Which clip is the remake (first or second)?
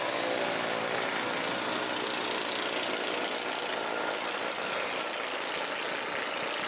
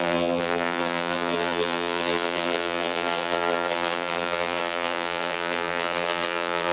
second